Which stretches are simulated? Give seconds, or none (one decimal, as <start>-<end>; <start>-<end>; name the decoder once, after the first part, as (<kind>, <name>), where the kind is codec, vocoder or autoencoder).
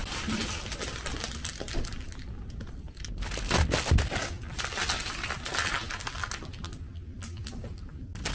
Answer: none